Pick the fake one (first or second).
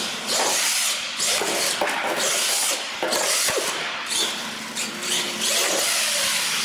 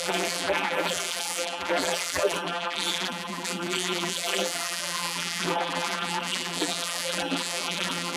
second